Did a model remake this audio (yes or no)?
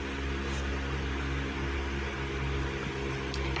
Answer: no